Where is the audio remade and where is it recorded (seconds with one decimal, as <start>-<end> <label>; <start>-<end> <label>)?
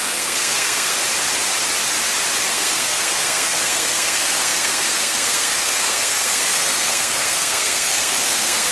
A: 0.0-1.0 remade; 1.0-2.5 recorded; 2.5-8.7 remade